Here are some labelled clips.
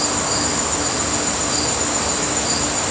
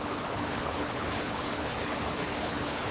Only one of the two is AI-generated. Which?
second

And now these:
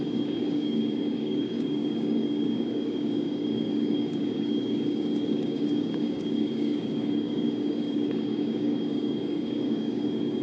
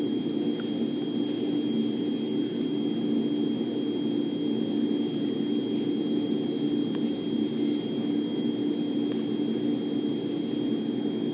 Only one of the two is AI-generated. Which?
first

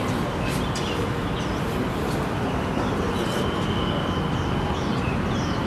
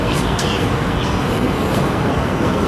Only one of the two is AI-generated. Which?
second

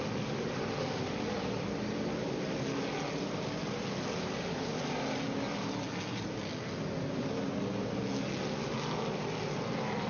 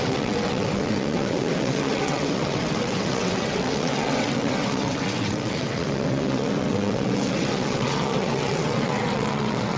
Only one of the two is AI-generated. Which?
second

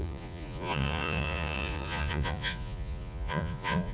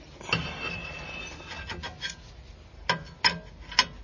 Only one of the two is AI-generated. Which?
first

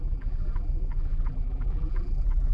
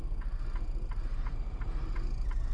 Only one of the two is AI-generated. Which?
first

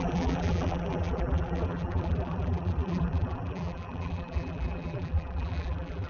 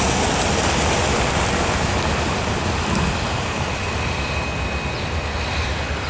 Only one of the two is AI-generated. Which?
first